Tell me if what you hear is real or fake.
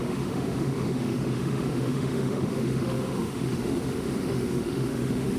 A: fake